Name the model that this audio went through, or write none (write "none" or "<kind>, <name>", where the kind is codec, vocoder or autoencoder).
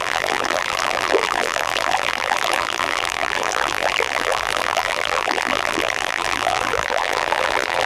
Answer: vocoder, BigVGAN v2